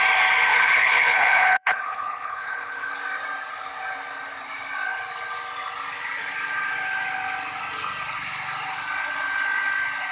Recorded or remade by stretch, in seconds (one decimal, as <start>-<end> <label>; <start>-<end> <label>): 0.0-0.5 recorded; 0.5-2.9 remade; 2.9-10.1 recorded